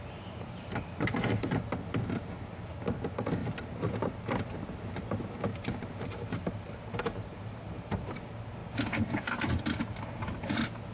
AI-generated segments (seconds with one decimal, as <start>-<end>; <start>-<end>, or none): 0.0-1.6; 5.5-8.2